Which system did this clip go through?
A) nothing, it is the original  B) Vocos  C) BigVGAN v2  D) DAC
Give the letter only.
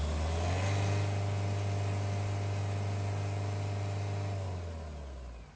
A